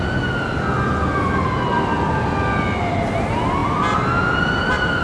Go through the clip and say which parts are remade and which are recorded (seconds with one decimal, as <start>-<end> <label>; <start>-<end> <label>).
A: 0.0-5.0 recorded